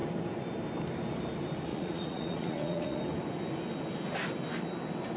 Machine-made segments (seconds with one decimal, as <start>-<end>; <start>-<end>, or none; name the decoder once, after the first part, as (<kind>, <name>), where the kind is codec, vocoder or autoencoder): 1.7-3.0 (vocoder, Vocos)